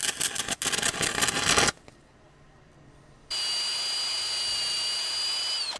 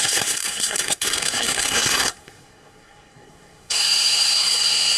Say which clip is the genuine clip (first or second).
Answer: first